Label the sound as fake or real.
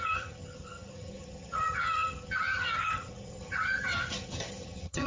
fake